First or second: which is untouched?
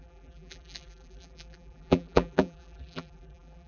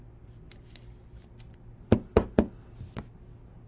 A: second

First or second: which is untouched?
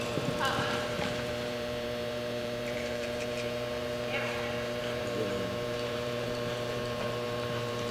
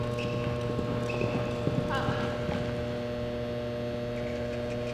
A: second